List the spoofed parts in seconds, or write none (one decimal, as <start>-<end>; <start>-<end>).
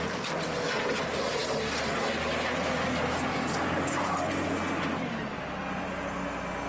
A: none